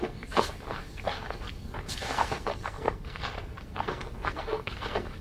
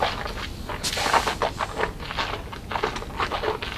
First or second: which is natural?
second